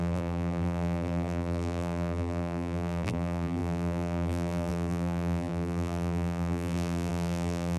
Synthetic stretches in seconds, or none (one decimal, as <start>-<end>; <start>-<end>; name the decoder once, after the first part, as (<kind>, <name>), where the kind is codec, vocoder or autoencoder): 0.0-7.8 (vocoder, BigVGAN v2)